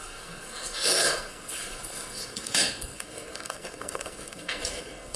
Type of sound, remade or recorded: remade